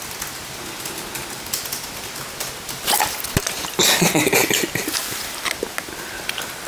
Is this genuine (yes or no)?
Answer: yes